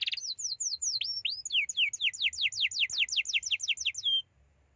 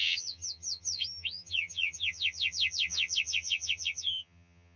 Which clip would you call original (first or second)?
first